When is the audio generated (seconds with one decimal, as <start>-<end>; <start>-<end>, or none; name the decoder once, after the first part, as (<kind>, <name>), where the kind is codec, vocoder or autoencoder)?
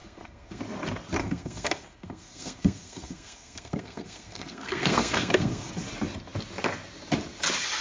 0.0-0.6 (codec, SNAC); 1.2-5.7